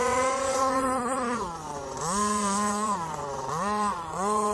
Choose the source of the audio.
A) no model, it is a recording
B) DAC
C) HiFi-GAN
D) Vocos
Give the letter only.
D